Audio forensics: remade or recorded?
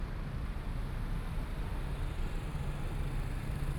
recorded